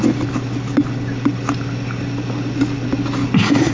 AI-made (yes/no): no